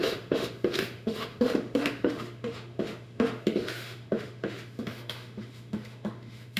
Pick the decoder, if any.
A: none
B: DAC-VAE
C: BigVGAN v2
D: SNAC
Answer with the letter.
B